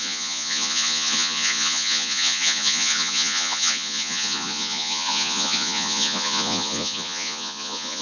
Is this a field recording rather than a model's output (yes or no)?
no